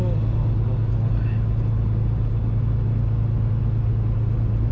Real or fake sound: real